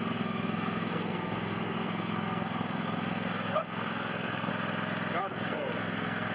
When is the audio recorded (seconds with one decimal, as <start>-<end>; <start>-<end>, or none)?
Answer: 4.5-5.2